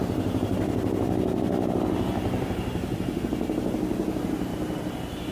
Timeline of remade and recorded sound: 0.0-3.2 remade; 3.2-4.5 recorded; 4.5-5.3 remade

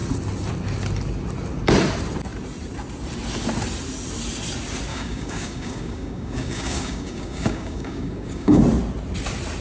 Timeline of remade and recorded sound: 0.0-4.9 recorded; 4.9-8.6 remade; 8.6-9.6 recorded

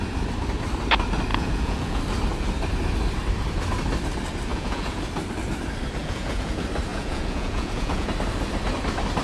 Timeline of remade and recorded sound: 0.0-1.3 recorded; 1.3-2.0 remade; 2.0-4.5 recorded; 4.5-5.0 remade; 5.0-6.0 recorded; 6.0-6.5 remade; 6.5-6.9 recorded; 6.9-8.1 remade; 8.1-9.2 recorded

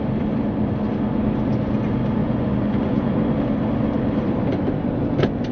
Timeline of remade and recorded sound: 0.0-2.2 recorded; 2.2-3.0 remade; 3.0-5.5 recorded